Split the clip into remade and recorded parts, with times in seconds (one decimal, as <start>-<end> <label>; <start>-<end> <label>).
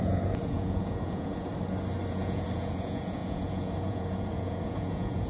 0.0-1.5 remade; 1.5-2.1 recorded; 2.1-5.3 remade